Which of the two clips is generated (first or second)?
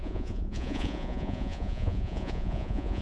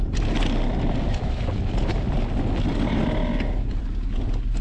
first